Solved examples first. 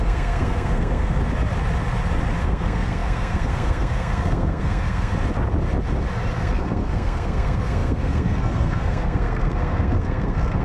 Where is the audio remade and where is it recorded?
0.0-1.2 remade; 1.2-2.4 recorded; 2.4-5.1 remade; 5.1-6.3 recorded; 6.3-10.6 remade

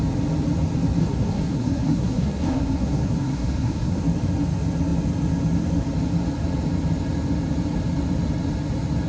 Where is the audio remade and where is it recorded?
0.0-1.0 recorded; 1.0-4.0 remade; 4.0-9.1 recorded

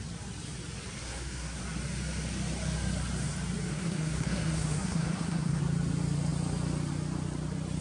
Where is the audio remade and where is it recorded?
0.0-1.0 recorded; 1.0-1.6 remade; 1.6-3.7 recorded; 3.7-5.6 remade; 5.6-7.8 recorded

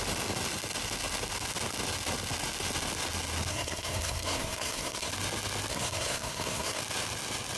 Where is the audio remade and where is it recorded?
0.0-3.5 recorded; 3.5-5.1 remade; 5.1-5.7 recorded; 5.7-6.8 remade; 6.8-7.6 recorded